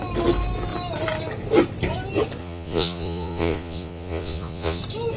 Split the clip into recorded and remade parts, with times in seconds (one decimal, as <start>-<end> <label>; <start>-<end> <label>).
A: 0.0-2.4 recorded; 2.4-4.8 remade; 4.8-5.2 recorded